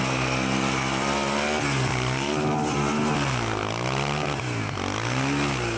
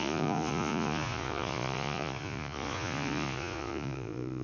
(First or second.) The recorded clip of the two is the first